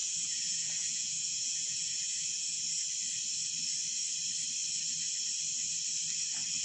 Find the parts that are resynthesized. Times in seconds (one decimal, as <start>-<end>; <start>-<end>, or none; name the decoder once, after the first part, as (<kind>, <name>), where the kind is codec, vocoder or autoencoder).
0.0-2.6 (vocoder, Vocos)